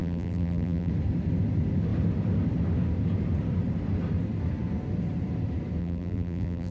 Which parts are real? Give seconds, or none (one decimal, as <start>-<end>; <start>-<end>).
0.9-5.8